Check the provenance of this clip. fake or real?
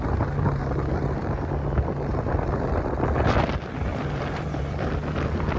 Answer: real